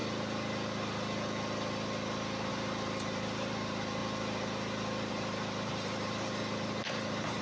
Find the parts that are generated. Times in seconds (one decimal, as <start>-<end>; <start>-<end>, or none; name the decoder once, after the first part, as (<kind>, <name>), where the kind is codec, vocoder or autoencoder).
2.5-4.0 (vocoder, BigVGAN v2); 5.1-7.4